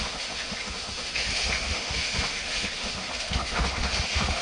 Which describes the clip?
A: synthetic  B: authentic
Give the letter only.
A